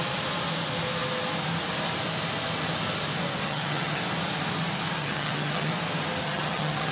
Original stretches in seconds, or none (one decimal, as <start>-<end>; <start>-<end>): 0.0-3.4; 4.0-5.0; 5.7-6.2